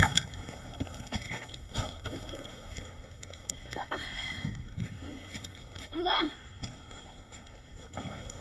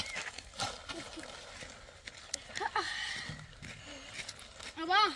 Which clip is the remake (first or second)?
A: first